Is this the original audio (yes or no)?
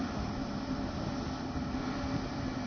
yes